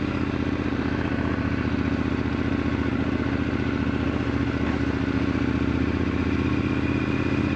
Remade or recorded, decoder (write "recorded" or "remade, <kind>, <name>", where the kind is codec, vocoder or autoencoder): recorded